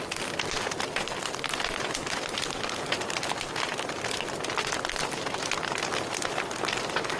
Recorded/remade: recorded